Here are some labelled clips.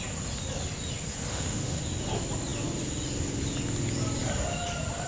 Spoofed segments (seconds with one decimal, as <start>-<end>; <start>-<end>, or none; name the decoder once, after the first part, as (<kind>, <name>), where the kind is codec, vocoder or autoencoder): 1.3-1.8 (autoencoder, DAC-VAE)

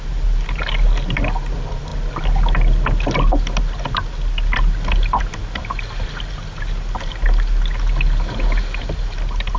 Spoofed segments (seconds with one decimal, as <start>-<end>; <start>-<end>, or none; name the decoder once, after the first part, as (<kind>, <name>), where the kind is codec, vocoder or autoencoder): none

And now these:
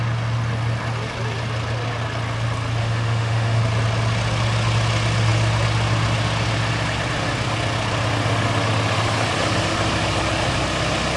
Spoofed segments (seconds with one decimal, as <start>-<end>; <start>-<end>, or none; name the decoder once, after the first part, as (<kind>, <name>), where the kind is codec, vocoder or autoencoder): 2.8-3.6 (autoencoder, DAC-VAE)

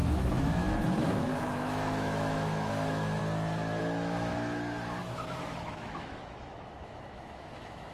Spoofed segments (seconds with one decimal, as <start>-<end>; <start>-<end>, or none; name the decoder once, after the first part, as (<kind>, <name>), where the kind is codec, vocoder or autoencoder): 0.0-3.2 (autoencoder, DAC-VAE); 3.8-4.3; 5.0-7.9